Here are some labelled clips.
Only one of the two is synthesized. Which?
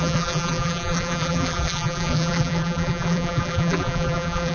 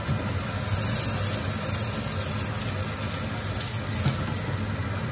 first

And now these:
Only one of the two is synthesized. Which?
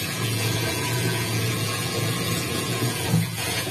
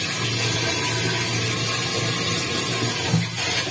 first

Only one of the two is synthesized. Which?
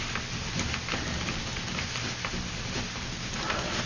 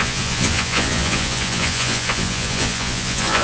second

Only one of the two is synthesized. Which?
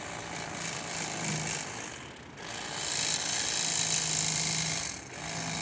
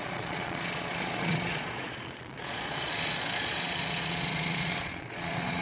second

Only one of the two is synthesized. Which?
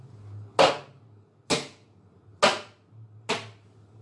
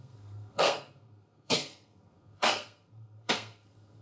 second